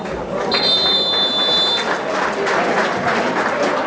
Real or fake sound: real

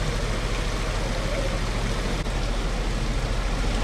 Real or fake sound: real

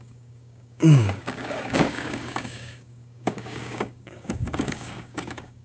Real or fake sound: fake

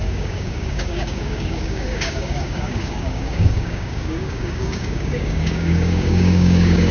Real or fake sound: fake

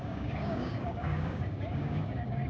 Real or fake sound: fake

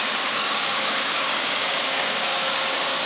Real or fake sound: fake